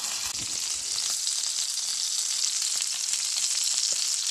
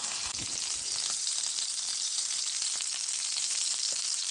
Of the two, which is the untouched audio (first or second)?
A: first